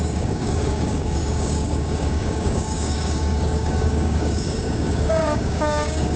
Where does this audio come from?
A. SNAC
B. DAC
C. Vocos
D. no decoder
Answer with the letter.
B